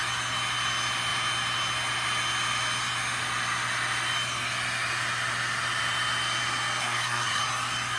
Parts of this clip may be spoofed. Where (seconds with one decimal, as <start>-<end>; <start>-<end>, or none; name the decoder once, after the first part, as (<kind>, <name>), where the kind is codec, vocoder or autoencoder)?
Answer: 6.8-7.4 (codec, SNAC)